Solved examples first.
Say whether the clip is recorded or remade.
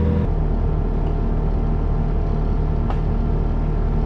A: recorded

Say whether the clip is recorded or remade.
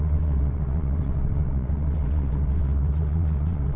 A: remade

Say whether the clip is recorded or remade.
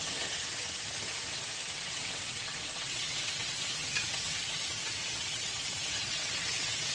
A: remade